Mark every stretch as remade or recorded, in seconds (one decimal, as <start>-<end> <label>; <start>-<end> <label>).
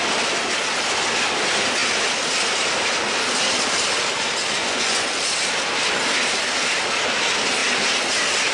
0.0-4.6 recorded; 4.6-5.3 remade; 5.3-8.5 recorded